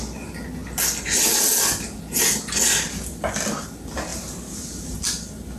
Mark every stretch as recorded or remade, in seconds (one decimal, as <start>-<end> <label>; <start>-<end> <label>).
0.0-4.1 recorded; 4.1-5.0 remade; 5.0-5.6 recorded